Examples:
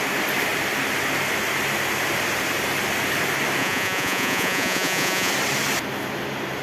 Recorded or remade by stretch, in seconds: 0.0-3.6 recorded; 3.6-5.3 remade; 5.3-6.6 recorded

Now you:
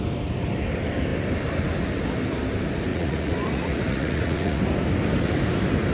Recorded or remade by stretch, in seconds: 0.0-2.9 recorded; 2.9-4.6 remade; 4.6-5.9 recorded

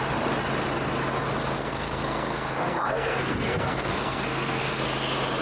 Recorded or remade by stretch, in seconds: 0.0-1.6 recorded; 1.6-4.8 remade; 4.8-5.4 recorded

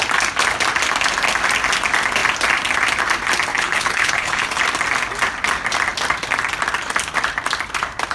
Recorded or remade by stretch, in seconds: 0.0-3.5 recorded; 3.5-4.6 remade; 4.6-8.1 recorded

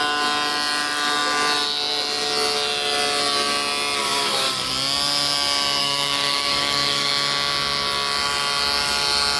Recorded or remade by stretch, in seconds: 0.0-4.0 recorded; 4.0-4.7 remade; 4.7-5.8 recorded; 5.8-7.1 remade; 7.1-9.4 recorded

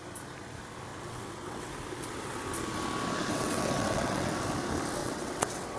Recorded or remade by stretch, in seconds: 0.0-0.9 recorded; 0.9-1.7 remade; 1.7-3.3 recorded; 3.3-4.4 remade; 4.4-5.0 recorded; 5.0-5.8 remade

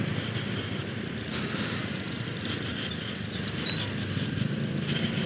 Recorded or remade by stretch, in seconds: 0.0-5.3 recorded

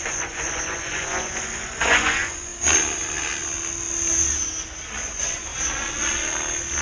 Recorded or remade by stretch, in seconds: 0.0-2.5 remade; 2.5-5.1 recorded; 5.1-5.5 remade; 5.5-6.8 recorded